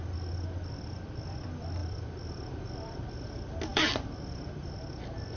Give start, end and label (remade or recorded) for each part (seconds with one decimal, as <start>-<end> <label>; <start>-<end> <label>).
0.0-1.8 recorded; 1.8-3.0 remade; 3.0-3.7 recorded; 3.7-4.6 remade; 4.6-5.4 recorded